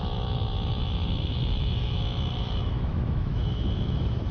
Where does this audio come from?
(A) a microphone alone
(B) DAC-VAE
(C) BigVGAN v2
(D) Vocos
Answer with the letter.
B